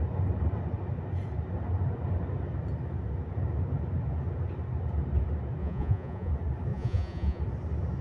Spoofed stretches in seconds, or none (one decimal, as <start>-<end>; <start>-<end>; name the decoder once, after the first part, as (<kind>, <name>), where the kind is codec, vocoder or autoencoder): 5.6-6.3 (vocoder, Vocos); 6.7-7.4